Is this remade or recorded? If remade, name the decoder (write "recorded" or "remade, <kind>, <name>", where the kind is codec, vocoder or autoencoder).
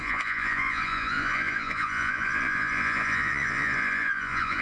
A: remade, vocoder, Vocos